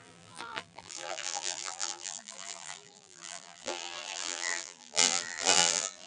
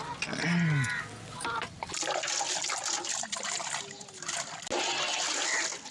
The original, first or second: second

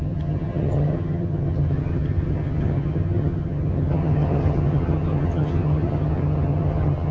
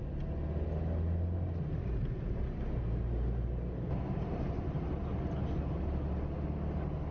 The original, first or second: second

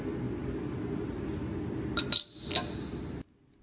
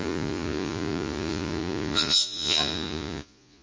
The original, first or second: first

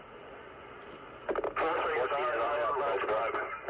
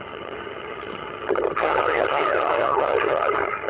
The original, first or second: first